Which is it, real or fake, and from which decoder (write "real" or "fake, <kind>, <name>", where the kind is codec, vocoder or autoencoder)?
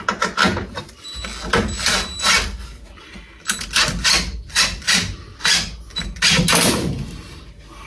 real